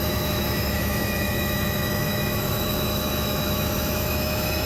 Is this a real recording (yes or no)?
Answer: no